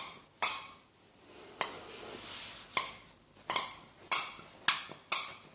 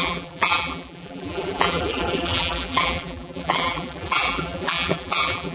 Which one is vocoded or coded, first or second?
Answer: second